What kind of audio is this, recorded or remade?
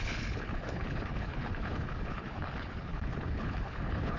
remade